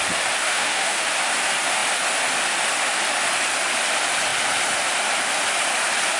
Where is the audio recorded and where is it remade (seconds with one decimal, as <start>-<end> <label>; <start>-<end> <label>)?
0.0-0.4 recorded; 0.4-1.1 remade; 1.1-6.2 recorded